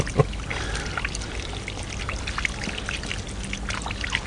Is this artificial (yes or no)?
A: no